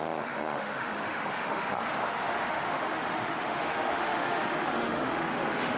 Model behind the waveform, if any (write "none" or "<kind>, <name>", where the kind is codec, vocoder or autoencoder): autoencoder, DAC-VAE